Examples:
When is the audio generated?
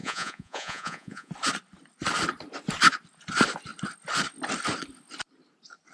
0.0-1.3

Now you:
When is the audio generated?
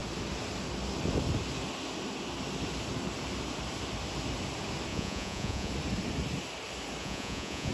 4.9-5.7; 7.0-7.7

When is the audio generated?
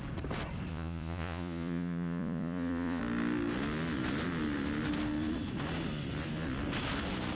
0.7-3.0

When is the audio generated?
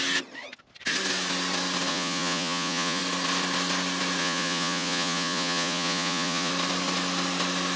1.9-3.0; 4.2-6.5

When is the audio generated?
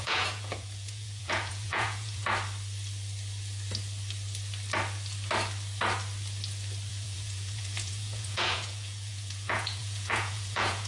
0.0-2.2; 6.9-10.9